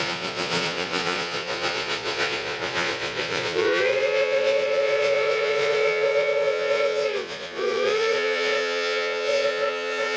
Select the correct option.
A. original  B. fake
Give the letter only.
B